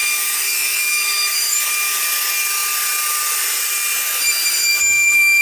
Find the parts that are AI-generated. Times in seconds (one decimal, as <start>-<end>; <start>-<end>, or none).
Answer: 0.0-1.7; 4.6-5.4